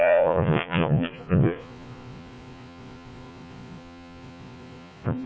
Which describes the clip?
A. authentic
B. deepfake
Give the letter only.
B